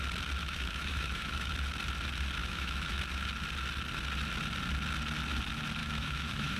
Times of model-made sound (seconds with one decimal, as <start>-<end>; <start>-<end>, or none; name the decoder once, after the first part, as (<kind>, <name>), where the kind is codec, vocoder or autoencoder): 0.4-1.5 (autoencoder, DAC-VAE); 2.4-3.0; 5.8-6.6